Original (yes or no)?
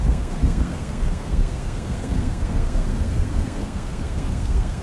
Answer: no